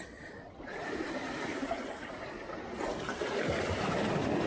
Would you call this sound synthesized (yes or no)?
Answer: no